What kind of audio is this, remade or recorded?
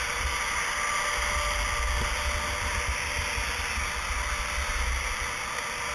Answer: recorded